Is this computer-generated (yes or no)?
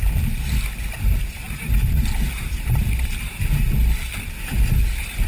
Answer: no